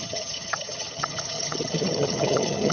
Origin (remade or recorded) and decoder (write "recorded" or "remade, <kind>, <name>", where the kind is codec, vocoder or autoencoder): remade, vocoder, HiFi-GAN